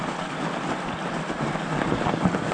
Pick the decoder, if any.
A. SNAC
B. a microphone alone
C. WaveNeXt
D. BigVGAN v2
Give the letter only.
B